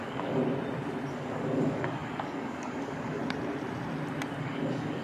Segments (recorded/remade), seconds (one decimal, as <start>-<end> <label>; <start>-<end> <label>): 0.0-0.4 remade; 0.4-1.1 recorded; 1.1-3.2 remade; 3.2-4.4 recorded; 4.4-5.0 remade